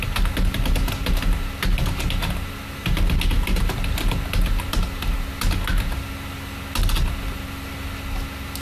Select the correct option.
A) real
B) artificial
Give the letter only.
A